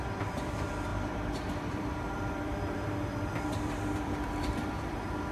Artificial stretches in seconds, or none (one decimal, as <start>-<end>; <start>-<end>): 0.0-5.3

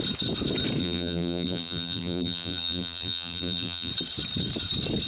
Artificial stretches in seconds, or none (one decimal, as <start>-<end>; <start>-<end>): 0.8-3.9

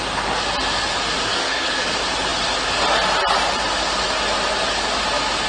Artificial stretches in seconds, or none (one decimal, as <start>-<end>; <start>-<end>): 1.3-1.9

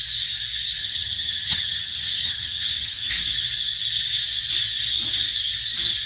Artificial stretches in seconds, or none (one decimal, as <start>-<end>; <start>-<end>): 0.8-3.1

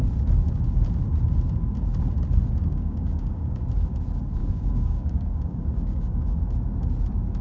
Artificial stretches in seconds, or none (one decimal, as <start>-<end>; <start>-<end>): 2.6-3.6; 4.4-6.4

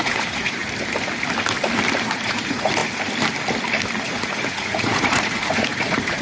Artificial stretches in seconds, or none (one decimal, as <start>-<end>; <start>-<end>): 0.0-0.6; 2.0-2.8; 4.0-6.2